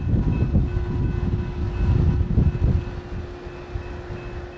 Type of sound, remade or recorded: recorded